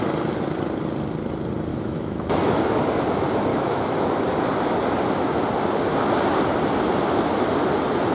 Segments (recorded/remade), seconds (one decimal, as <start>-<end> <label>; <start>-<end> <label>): 0.0-1.7 recorded; 1.7-2.6 remade; 2.6-3.5 recorded; 3.5-4.2 remade; 4.2-8.1 recorded

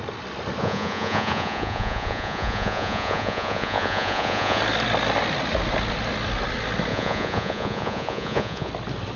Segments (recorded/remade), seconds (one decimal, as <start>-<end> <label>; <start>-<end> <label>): 0.0-0.6 recorded; 0.6-4.6 remade; 4.6-6.9 recorded; 6.9-8.7 remade; 8.7-9.2 recorded